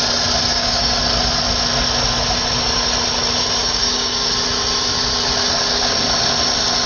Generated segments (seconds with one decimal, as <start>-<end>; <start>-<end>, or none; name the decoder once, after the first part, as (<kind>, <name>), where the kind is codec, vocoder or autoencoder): 0.5-1.0 (codec, DAC); 3.6-4.3